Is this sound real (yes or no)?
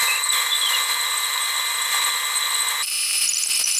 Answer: yes